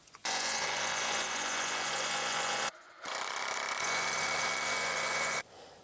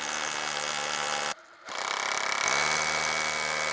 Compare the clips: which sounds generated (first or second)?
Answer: first